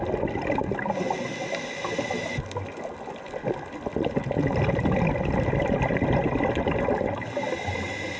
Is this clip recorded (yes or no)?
yes